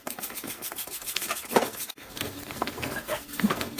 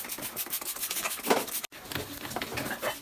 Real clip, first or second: second